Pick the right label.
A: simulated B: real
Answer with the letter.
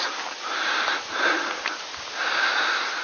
B